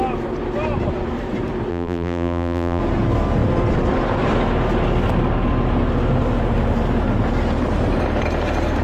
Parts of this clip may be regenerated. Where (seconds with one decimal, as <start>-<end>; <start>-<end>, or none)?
1.7-2.8